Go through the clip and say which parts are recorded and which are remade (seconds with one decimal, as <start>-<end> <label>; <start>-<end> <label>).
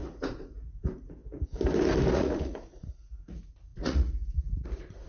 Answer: 0.0-1.2 remade; 1.2-2.1 recorded; 2.1-5.1 remade